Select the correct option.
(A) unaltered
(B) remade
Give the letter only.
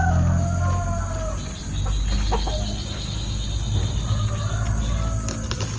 A